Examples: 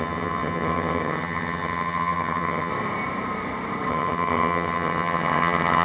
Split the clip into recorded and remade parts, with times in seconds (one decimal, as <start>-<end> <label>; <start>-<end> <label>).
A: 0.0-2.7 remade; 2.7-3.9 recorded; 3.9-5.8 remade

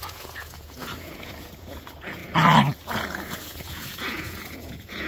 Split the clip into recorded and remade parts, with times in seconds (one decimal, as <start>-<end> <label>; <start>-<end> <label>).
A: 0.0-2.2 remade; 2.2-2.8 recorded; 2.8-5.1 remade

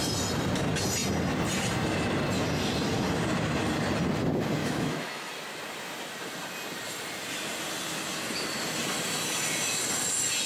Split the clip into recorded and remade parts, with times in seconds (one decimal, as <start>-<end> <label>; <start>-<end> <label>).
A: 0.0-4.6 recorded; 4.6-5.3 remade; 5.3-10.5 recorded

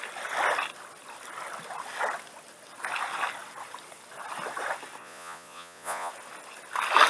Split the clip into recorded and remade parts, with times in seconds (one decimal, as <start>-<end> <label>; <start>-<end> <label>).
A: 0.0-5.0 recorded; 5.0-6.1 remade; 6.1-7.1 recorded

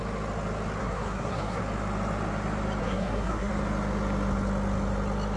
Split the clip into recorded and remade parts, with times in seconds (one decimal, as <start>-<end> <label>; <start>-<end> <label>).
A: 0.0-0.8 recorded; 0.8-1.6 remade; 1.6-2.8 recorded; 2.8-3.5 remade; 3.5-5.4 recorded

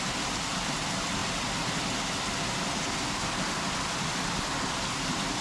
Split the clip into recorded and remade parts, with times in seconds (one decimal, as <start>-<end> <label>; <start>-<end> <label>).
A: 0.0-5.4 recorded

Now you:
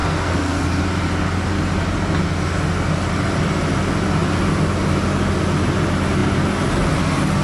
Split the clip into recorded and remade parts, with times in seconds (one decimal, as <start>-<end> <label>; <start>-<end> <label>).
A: 0.0-0.6 remade; 0.6-7.4 recorded